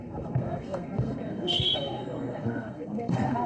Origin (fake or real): fake